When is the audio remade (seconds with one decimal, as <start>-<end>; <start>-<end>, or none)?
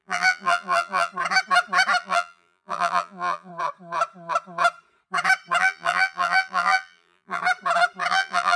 0.0-1.1; 2.0-3.5; 5.6-7.4; 8.1-8.6